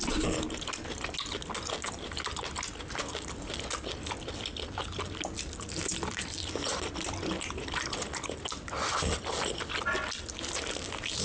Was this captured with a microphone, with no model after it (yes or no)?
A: yes